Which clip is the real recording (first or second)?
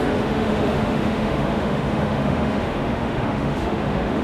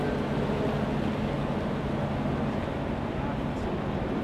second